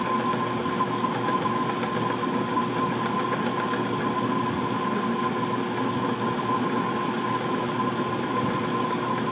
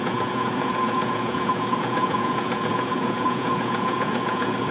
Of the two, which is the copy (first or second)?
second